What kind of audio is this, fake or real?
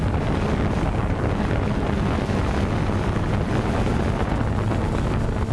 real